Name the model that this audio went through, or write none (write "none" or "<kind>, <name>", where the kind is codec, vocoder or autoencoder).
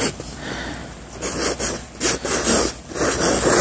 none